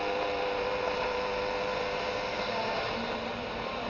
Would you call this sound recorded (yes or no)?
no